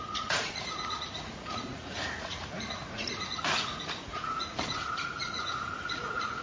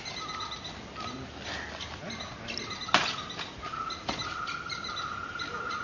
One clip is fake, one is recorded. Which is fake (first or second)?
first